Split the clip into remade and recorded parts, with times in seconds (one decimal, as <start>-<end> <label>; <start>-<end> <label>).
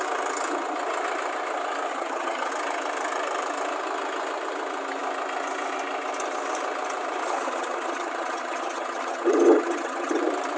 0.0-1.9 recorded; 1.9-2.5 remade; 2.5-7.2 recorded; 7.2-10.2 remade; 10.2-10.6 recorded